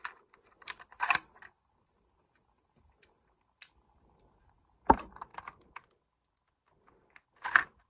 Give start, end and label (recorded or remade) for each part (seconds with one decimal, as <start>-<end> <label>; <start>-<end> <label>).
0.0-5.3 remade; 5.3-7.9 recorded

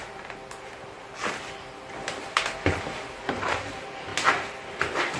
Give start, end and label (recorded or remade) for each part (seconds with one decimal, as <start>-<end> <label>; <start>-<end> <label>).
0.0-0.4 remade; 0.4-3.3 recorded; 3.3-4.1 remade; 4.1-4.8 recorded; 4.8-5.2 remade

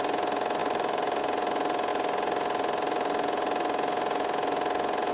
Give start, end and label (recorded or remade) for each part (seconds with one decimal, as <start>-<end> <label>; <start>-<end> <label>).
0.0-0.6 recorded; 0.6-1.2 remade; 1.2-5.1 recorded

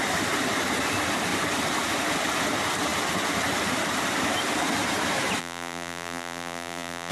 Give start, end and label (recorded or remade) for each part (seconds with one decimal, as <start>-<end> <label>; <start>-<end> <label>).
0.0-5.4 recorded; 5.4-7.1 remade

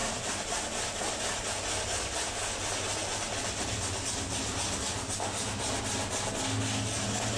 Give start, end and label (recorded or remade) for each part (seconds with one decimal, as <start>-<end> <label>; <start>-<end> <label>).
0.0-1.5 remade; 1.5-7.4 recorded

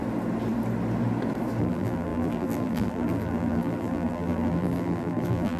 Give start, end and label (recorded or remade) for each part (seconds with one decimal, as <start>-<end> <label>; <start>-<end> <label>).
0.0-1.6 recorded; 1.6-5.6 remade